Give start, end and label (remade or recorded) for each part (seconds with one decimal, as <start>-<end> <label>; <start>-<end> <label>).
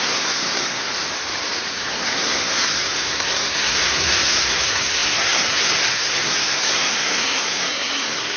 0.0-0.9 remade; 0.9-1.7 recorded; 1.7-8.4 remade